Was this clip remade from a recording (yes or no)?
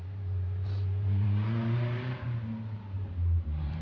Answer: yes